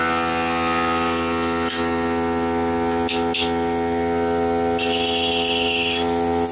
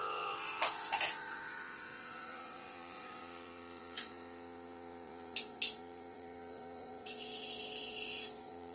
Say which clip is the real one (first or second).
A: first